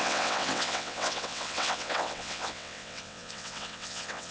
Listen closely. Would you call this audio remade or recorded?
remade